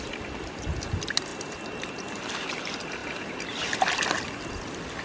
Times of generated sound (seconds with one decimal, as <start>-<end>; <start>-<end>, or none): none